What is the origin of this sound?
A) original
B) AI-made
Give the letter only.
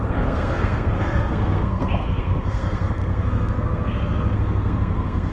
B